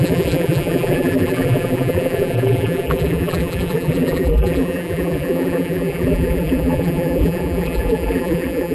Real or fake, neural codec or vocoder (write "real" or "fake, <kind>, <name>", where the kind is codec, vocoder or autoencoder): fake, vocoder, BigVGAN v2